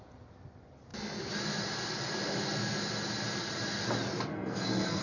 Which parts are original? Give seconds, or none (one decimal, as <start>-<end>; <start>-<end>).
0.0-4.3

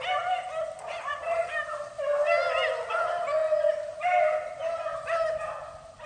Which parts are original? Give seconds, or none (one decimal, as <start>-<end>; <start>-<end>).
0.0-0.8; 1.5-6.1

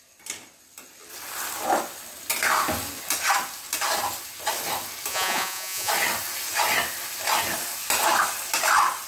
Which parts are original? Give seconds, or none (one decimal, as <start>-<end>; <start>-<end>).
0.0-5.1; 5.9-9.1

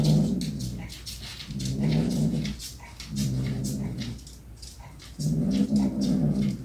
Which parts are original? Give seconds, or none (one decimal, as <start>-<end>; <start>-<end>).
0.0-6.6